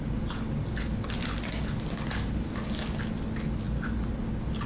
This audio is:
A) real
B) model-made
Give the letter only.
A